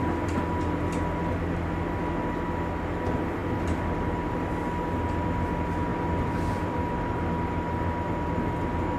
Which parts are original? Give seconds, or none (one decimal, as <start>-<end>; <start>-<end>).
0.0-3.4; 4.1-5.9; 6.8-9.0